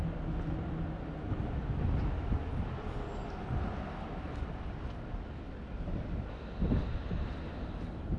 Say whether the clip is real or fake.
real